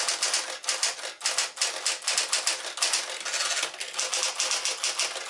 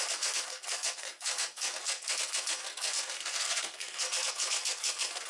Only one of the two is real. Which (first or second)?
first